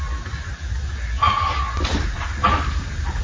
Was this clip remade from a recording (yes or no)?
no